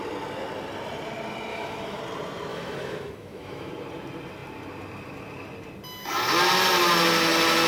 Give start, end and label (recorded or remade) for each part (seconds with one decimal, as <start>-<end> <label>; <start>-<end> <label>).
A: 0.0-1.5 recorded; 1.5-2.0 remade; 2.0-2.5 recorded; 2.5-3.7 remade; 3.7-7.7 recorded